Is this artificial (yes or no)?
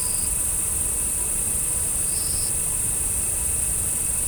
yes